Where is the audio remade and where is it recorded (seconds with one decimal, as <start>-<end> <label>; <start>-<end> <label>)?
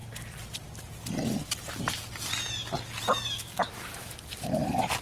0.0-5.0 recorded